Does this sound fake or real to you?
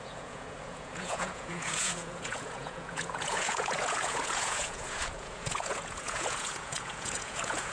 fake